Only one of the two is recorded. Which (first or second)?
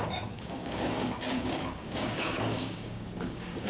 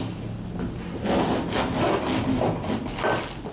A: second